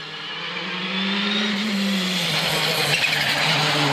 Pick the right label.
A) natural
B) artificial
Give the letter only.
A